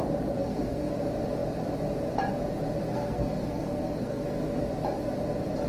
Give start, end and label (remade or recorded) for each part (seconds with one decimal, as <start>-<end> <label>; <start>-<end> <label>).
0.0-0.4 recorded; 0.4-0.9 remade; 0.9-2.9 recorded; 2.9-4.6 remade; 4.6-5.7 recorded